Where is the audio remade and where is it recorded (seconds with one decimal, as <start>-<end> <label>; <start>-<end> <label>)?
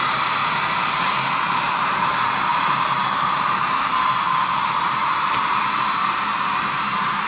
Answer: 0.0-0.4 remade; 0.4-1.6 recorded; 1.6-7.3 remade